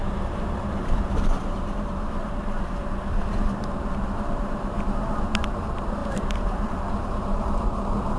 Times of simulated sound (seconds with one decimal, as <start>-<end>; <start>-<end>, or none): 0.0-8.2